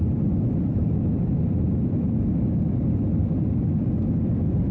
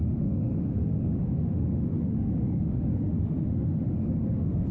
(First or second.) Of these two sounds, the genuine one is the first